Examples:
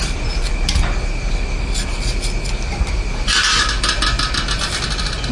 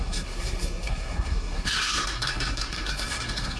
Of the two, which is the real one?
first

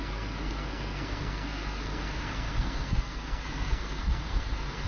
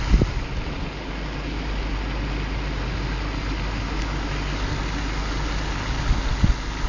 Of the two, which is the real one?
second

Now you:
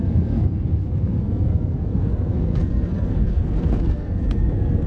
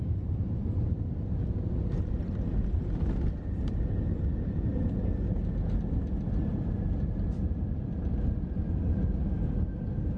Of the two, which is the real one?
second